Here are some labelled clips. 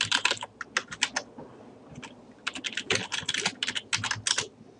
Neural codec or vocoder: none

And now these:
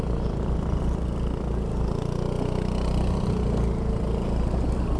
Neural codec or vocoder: none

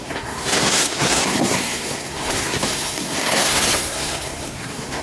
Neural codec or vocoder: codec, SNAC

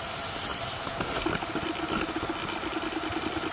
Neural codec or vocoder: none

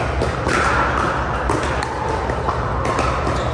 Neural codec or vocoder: none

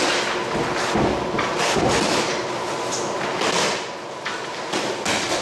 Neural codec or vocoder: none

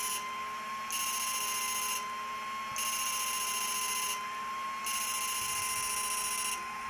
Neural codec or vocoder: none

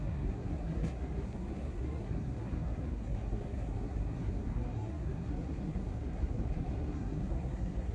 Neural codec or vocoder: codec, SNAC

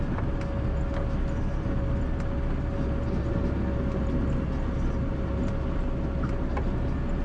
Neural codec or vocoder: none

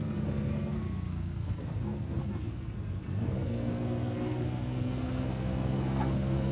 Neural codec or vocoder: codec, SNAC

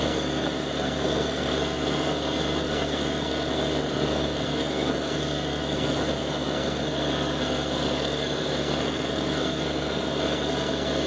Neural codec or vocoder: codec, SNAC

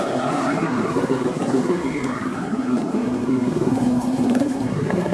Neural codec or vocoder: codec, SNAC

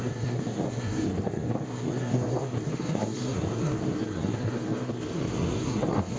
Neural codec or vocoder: codec, SNAC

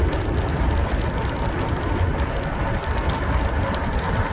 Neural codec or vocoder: none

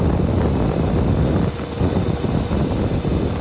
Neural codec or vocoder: none